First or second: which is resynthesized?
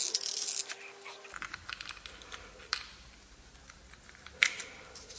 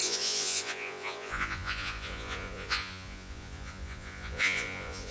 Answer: second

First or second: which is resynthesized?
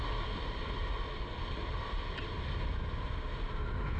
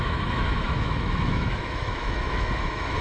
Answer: second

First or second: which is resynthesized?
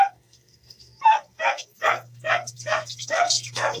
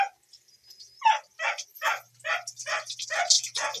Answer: first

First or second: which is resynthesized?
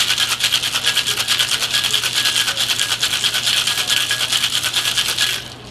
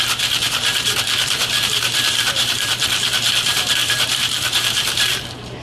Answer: second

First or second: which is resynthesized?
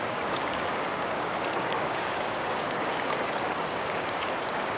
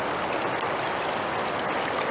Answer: first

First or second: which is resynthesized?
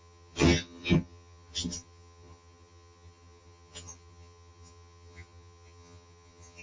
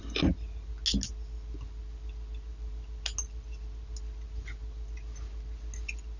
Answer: first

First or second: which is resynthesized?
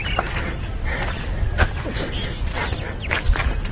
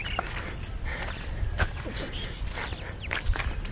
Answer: second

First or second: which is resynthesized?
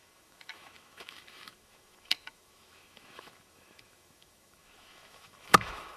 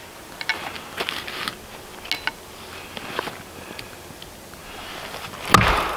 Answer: first